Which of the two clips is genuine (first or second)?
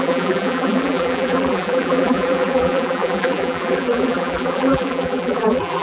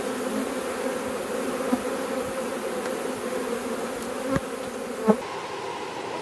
second